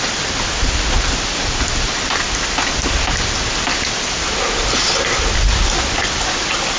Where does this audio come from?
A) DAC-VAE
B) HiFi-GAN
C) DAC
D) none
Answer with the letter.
D